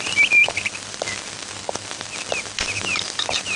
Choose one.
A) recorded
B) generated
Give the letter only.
B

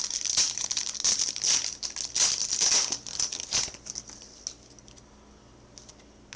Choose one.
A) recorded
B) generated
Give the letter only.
A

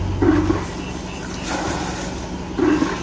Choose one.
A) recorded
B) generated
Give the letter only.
A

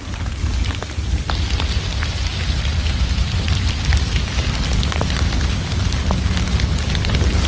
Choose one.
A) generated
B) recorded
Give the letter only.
B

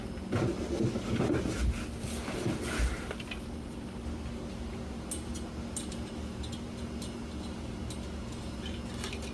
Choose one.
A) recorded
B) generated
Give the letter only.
A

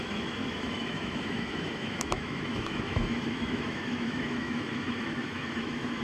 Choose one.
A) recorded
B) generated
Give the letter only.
B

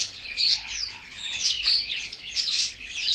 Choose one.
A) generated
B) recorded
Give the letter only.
A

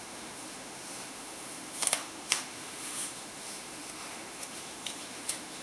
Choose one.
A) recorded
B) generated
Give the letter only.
B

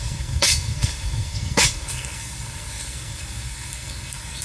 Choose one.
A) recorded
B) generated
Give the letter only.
B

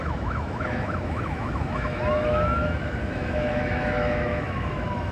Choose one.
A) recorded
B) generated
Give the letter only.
B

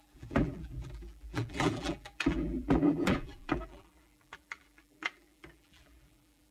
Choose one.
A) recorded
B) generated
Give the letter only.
B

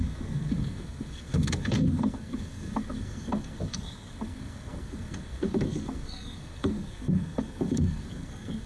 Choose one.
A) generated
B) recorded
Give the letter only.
A